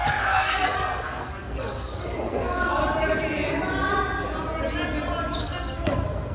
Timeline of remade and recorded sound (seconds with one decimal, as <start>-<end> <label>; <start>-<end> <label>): 0.0-2.8 remade; 2.8-5.4 recorded; 5.4-6.3 remade